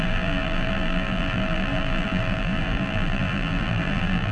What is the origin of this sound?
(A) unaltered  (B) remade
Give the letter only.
B